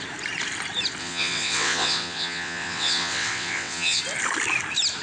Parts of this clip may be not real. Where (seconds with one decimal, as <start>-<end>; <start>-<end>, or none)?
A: 1.0-4.0